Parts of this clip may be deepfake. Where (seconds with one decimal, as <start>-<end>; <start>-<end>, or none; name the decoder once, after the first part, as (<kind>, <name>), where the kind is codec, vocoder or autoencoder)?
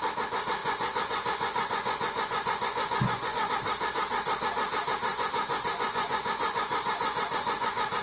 0.6-3.5 (vocoder, Vocos); 5.1-8.0